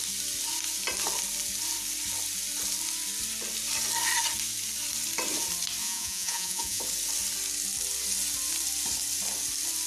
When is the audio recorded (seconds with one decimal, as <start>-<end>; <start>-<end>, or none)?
0.0-5.8; 6.8-9.9